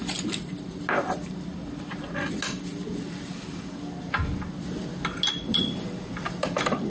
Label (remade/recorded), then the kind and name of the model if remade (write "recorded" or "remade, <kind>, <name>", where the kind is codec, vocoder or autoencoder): recorded